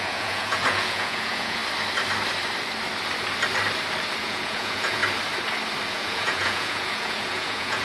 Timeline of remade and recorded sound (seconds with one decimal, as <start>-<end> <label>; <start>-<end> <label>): 0.0-1.6 remade; 1.6-4.2 recorded; 4.2-5.0 remade; 5.0-5.9 recorded; 5.9-7.8 remade